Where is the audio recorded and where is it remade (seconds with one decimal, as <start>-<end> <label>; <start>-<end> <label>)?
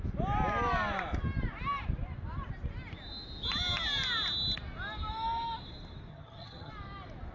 0.0-6.1 recorded; 6.1-6.7 remade; 6.7-7.3 recorded